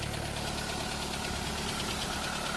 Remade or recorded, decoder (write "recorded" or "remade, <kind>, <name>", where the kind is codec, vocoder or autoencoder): recorded